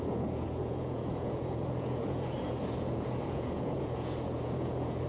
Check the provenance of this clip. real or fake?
fake